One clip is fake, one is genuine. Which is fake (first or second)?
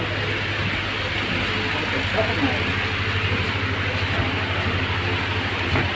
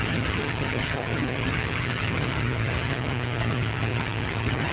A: second